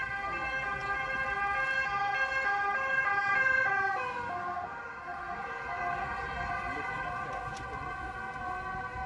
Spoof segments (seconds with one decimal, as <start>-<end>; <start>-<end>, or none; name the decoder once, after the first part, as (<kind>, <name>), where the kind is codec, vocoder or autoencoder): none